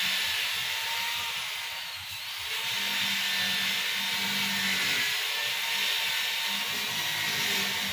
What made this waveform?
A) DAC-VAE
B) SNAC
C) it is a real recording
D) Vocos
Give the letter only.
C